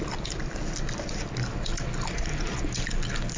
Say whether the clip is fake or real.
real